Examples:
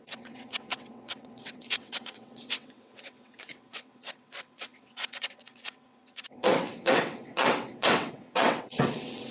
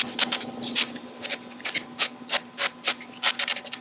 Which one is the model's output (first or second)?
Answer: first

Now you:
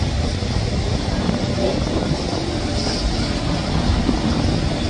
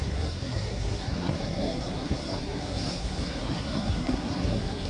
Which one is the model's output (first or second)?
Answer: second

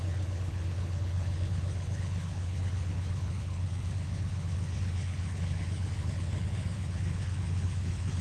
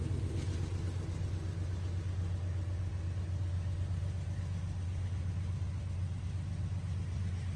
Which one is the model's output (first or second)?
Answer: first